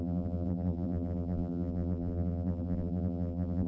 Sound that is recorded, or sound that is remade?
remade